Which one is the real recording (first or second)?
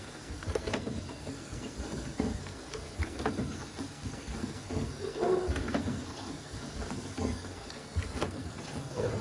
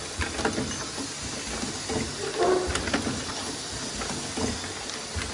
second